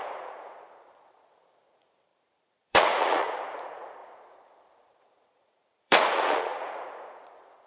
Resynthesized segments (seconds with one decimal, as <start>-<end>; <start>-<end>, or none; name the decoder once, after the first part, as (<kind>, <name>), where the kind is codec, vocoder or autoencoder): 0.0-7.7 (vocoder, Vocos)